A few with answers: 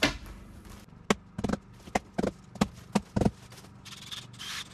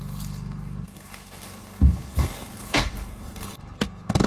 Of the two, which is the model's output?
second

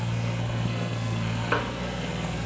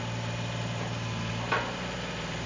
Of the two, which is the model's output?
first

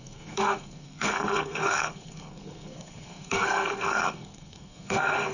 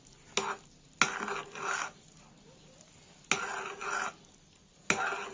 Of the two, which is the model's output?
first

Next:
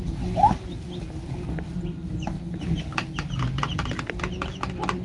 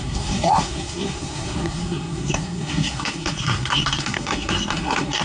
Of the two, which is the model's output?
second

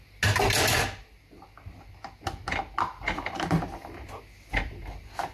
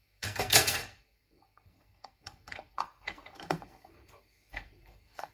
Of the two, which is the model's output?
second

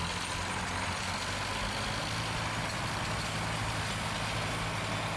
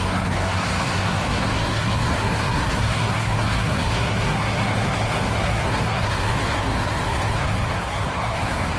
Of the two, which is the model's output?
second